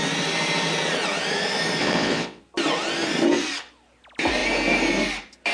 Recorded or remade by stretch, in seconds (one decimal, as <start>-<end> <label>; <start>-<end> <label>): 0.0-1.8 recorded; 1.8-2.4 remade; 2.4-5.5 recorded